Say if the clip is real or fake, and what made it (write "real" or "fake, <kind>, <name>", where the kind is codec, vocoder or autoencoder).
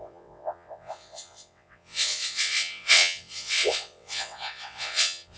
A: fake, vocoder, WaveNeXt